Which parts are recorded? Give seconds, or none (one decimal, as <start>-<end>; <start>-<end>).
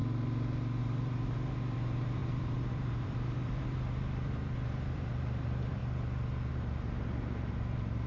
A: 0.0-0.8; 5.8-6.5